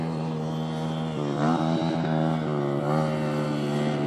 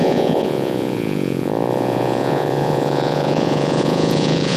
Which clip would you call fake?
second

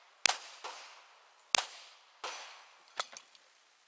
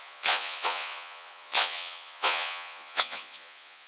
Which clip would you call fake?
second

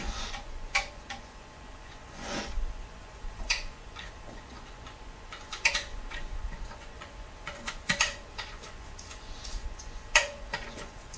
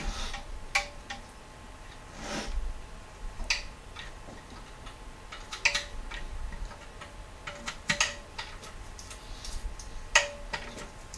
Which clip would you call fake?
first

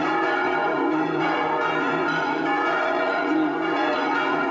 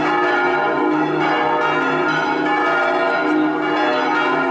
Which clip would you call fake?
first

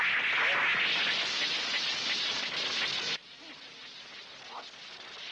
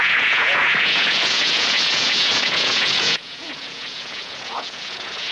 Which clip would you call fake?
second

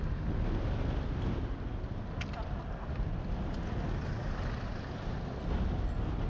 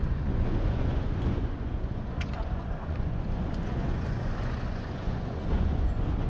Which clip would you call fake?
second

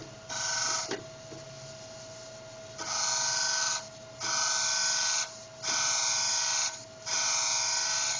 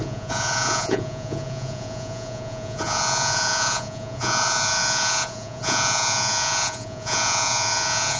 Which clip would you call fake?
second